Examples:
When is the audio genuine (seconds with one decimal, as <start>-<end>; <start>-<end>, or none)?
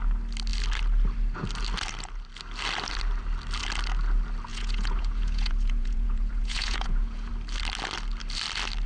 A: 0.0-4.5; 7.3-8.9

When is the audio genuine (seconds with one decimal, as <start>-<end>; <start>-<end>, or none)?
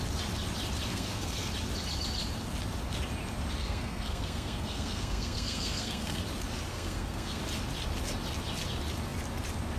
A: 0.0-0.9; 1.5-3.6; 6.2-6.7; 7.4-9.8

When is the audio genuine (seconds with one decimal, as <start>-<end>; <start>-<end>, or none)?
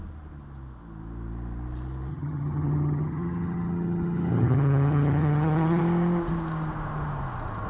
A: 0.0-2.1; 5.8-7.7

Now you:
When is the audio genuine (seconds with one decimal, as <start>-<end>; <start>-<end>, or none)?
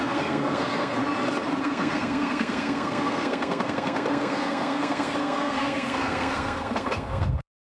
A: 1.0-1.6